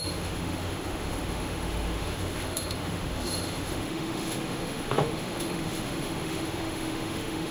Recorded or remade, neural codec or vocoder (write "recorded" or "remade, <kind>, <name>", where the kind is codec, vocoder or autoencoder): remade, autoencoder, DAC-VAE